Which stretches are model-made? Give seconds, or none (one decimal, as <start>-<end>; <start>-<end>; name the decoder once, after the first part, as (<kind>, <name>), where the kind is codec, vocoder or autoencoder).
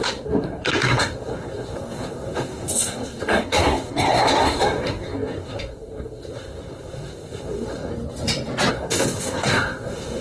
0.0-7.9 (codec, SNAC); 8.7-10.2